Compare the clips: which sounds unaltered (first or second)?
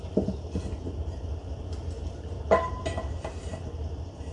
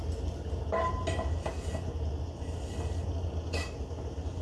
second